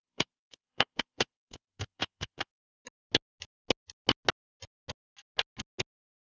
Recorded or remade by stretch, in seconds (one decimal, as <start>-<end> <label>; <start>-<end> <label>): 0.0-2.5 remade; 2.5-6.3 recorded